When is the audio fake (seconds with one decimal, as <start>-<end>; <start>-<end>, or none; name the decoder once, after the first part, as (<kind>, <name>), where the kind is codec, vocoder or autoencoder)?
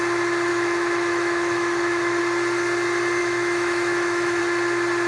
0.5-2.2 (autoencoder, DAC-VAE); 3.2-4.4